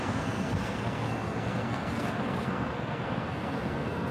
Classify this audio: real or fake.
fake